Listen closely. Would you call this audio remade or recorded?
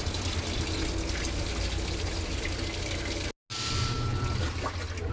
recorded